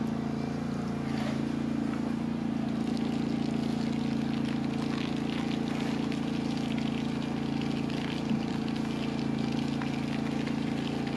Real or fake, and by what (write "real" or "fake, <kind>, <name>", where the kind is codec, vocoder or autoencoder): real